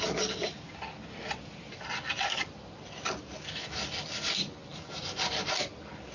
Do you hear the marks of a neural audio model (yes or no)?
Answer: no